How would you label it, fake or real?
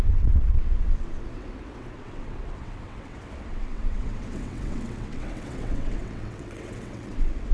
fake